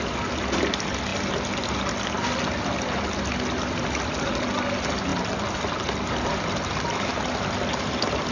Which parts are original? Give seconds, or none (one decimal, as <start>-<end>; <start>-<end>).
0.0-8.3